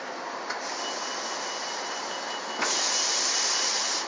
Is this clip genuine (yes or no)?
yes